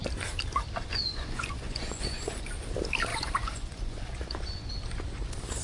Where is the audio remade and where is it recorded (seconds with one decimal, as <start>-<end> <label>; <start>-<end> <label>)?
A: 0.0-1.0 recorded; 1.0-2.6 remade; 2.6-3.1 recorded; 3.1-4.7 remade; 4.7-5.6 recorded